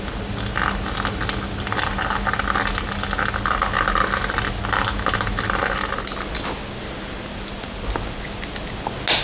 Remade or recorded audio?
recorded